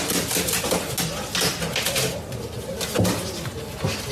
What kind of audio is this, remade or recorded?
recorded